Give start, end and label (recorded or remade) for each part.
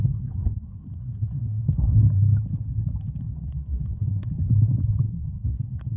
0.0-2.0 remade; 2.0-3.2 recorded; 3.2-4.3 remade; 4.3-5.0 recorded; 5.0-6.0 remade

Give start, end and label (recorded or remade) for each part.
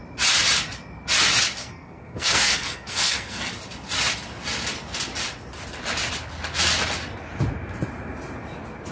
0.0-1.6 recorded; 1.6-3.5 remade; 3.5-8.9 recorded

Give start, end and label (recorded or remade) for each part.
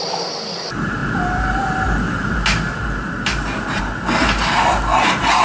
0.0-5.4 recorded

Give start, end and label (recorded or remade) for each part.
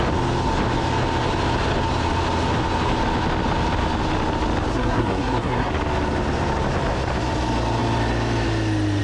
0.0-4.7 recorded; 4.7-5.7 remade; 5.7-9.0 recorded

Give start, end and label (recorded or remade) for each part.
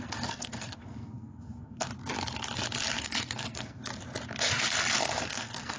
0.0-1.9 remade; 1.9-3.0 recorded; 3.0-3.9 remade; 3.9-5.2 recorded; 5.2-5.8 remade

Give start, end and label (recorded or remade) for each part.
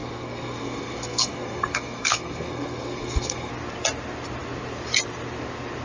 0.0-3.5 remade; 3.5-5.8 recorded